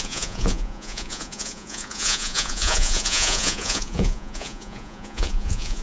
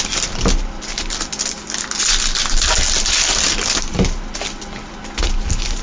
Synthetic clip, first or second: first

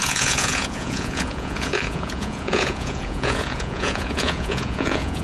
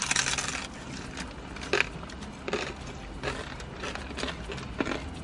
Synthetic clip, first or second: first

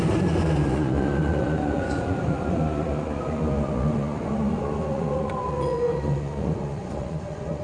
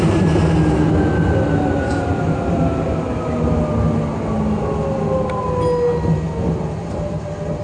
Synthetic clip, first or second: first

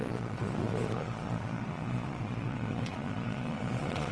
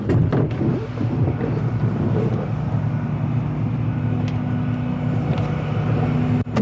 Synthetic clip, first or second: first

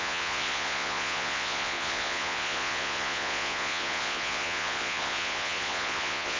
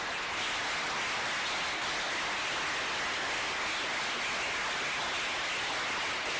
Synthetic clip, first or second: first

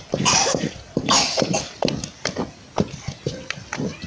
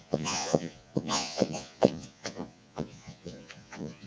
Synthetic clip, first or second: second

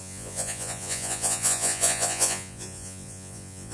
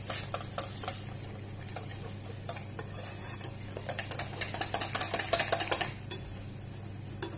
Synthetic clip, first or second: first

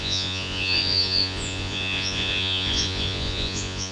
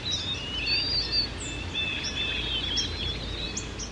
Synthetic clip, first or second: first